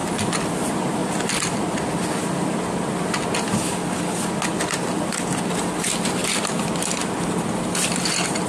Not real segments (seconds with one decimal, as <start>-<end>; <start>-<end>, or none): 0.5-1.0; 5.8-6.2; 8.1-8.5